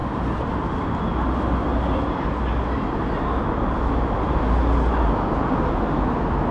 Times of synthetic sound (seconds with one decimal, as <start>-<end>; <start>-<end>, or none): none